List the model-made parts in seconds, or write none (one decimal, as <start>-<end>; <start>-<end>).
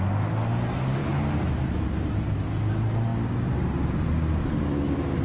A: none